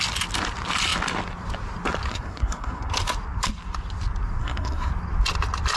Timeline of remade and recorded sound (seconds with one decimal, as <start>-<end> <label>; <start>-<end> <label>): 0.0-2.1 recorded; 2.1-2.9 remade; 2.9-4.4 recorded; 4.4-4.9 remade; 4.9-5.8 recorded